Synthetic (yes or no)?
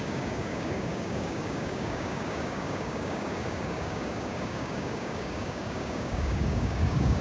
yes